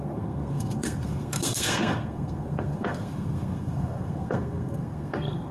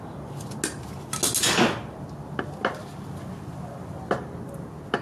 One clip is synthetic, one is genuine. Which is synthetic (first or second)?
first